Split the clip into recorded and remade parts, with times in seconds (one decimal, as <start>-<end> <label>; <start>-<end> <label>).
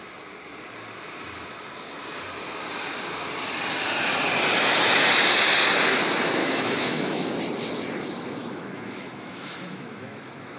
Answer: 0.0-6.4 recorded; 6.4-7.3 remade; 7.3-8.4 recorded; 8.4-10.6 remade